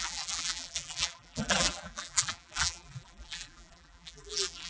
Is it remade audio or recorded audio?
remade